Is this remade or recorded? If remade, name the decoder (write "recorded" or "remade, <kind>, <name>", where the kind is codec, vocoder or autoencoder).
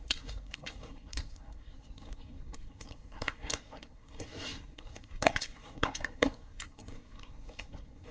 remade, codec, SNAC